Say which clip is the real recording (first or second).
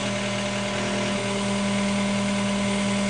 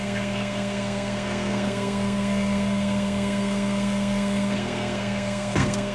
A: first